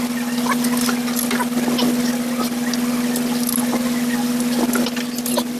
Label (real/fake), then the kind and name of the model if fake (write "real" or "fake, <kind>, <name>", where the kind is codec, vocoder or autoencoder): real